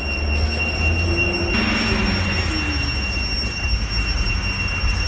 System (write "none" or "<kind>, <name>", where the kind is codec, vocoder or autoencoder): none